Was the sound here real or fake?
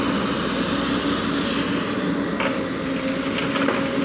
real